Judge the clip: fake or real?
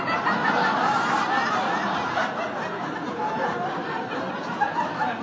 real